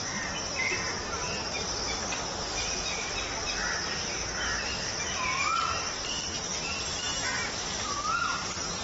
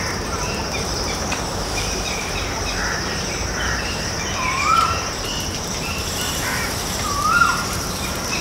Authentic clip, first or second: first